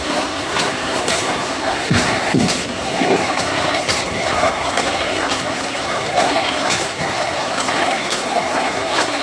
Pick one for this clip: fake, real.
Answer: fake